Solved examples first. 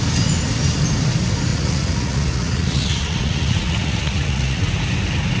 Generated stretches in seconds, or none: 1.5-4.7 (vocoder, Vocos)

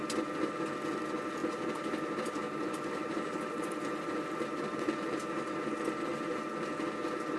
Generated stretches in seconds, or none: 1.4-4.6 (vocoder, BigVGAN v2)

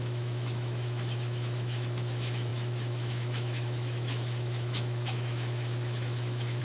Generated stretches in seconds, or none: 0.0-6.6 (autoencoder, DAC-VAE)

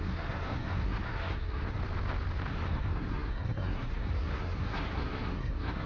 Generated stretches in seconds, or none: 0.0-1.8 (codec, SNAC); 2.5-5.9

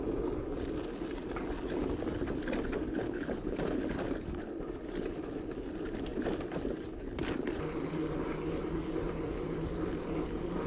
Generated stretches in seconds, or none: 3.0-3.8 (codec, HILCodec)